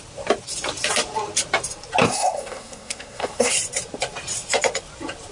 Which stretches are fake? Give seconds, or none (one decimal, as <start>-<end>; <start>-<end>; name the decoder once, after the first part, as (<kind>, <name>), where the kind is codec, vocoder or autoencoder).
2.1-3.5 (codec, SNAC)